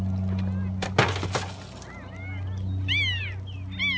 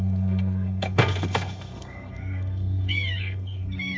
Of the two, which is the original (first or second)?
first